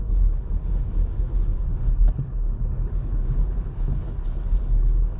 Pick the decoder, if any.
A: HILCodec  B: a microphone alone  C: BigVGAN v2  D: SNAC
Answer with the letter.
A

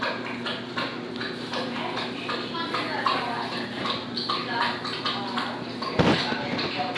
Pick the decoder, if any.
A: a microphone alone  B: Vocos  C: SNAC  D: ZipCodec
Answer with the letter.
A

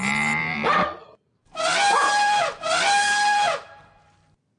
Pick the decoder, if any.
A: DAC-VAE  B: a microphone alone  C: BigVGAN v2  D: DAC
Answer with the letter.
C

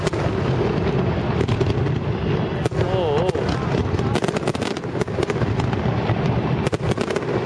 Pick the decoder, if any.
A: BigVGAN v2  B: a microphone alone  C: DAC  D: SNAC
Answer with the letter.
B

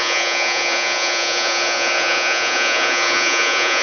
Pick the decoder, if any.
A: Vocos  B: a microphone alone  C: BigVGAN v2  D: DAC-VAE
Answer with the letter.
A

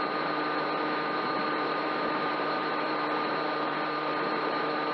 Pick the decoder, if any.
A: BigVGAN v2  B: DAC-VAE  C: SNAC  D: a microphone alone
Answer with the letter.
A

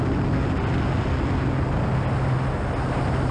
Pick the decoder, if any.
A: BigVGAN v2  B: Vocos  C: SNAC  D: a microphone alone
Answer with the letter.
D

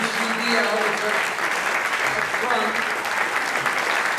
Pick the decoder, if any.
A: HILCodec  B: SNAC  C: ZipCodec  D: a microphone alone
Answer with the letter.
D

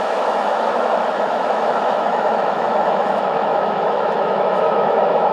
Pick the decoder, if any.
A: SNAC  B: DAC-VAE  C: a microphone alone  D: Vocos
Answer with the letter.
B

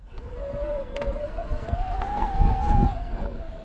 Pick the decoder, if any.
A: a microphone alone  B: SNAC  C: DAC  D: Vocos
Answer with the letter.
B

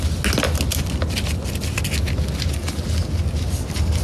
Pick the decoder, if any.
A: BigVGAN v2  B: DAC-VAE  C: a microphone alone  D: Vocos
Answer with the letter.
C